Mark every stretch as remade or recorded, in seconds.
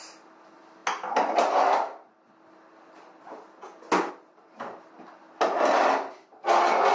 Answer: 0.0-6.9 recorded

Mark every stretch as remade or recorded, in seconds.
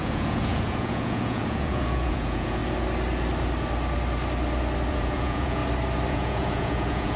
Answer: 0.0-2.6 remade; 2.6-4.9 recorded; 4.9-5.6 remade; 5.6-6.1 recorded; 6.1-7.2 remade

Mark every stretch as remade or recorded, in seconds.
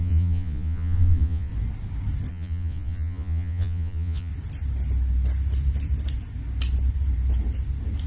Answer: 0.0-1.5 remade; 1.5-2.3 recorded; 2.3-4.3 remade; 4.3-8.1 recorded